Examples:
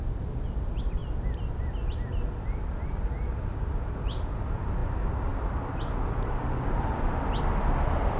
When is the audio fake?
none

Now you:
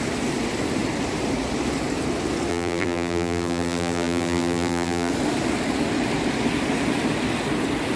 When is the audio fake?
2.5-5.1 (vocoder, BigVGAN v2)

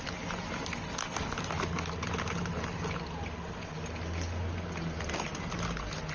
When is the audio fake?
none

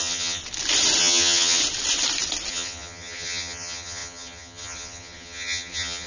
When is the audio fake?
0.0-0.4 (vocoder, HiFi-GAN); 1.0-1.6; 2.5-6.1

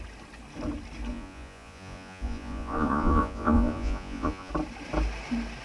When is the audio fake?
1.1-4.5 (vocoder, Vocos)